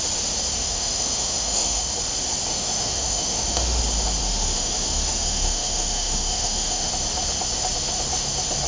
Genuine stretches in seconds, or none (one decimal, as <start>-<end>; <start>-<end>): 0.0-0.6; 1.9-2.5; 3.8-4.2; 6.9-8.7

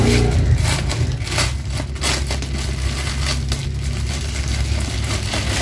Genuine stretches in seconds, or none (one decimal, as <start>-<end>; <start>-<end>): 0.0-5.6

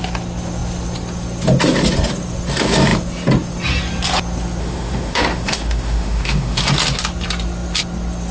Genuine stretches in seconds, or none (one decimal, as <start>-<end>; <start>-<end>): 0.0-4.6; 6.6-8.3

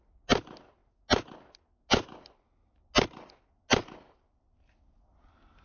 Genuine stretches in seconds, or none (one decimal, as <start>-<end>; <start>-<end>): 0.0-5.6

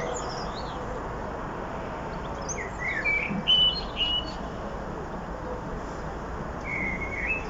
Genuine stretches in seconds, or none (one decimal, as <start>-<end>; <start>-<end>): 0.0-6.7

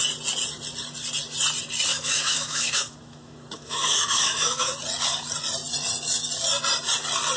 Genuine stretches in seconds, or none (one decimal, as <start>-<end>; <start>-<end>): 0.0-1.9; 4.7-7.4

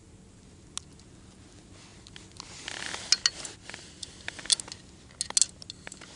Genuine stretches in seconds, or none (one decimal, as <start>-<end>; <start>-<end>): 0.0-6.2